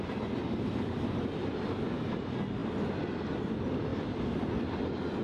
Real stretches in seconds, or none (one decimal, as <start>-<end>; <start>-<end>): 0.0-3.9; 4.5-5.2